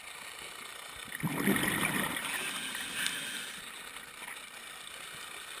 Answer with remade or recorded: recorded